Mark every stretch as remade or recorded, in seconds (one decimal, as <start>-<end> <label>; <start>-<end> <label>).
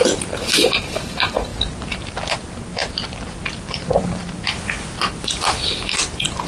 0.0-1.5 recorded; 1.5-2.1 remade; 2.1-2.8 recorded; 2.8-6.5 remade